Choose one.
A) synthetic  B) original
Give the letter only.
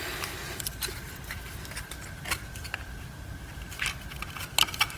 B